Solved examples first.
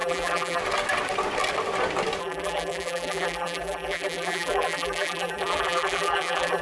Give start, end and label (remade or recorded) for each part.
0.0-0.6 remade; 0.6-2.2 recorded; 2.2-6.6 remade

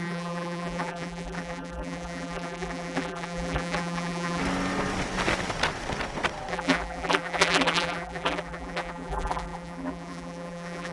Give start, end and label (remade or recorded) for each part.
0.0-4.4 remade; 4.4-6.5 recorded; 6.5-10.9 remade

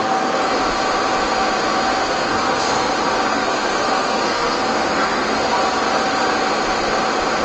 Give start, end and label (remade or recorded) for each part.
0.0-0.5 remade; 0.5-2.0 recorded; 2.0-2.9 remade; 2.9-3.3 recorded; 3.3-5.5 remade; 5.5-7.4 recorded

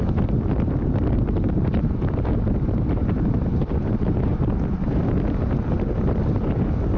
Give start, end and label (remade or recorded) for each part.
0.0-7.0 recorded

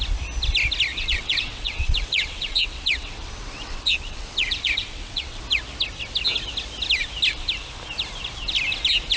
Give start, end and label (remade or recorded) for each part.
0.0-0.9 recorded; 0.9-5.4 remade; 5.4-9.2 recorded

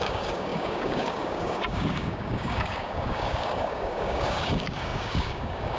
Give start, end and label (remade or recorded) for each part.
0.0-5.8 remade